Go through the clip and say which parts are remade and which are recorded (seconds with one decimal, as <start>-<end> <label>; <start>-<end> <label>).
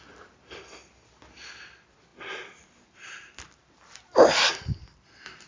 0.0-5.5 recorded